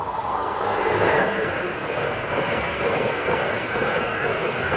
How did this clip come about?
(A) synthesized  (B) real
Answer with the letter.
A